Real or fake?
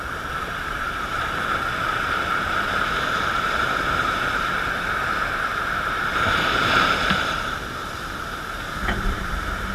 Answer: fake